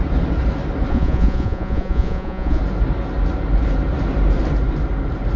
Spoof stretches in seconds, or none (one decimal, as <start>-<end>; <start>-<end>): 0.9-2.6